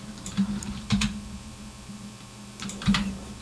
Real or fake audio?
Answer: fake